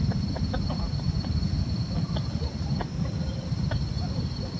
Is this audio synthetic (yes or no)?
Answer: yes